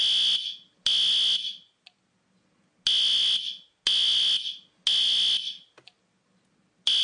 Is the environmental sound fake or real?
real